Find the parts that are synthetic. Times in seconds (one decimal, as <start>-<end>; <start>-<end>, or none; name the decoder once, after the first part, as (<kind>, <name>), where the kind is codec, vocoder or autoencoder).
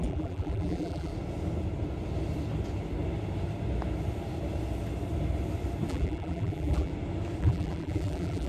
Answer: 0.0-1.1 (vocoder, BigVGAN v2); 5.9-6.9; 7.4-8.5